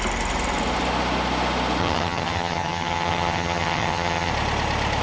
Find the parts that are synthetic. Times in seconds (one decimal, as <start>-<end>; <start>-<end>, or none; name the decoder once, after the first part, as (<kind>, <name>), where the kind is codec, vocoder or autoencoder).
1.8-4.3 (vocoder, HiFi-GAN)